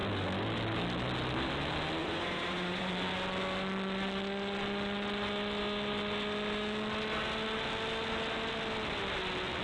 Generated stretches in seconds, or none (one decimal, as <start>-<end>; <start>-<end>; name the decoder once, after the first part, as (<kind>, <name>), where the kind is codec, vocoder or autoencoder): 2.0-2.9 (vocoder, Vocos)